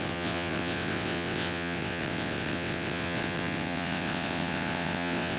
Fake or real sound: fake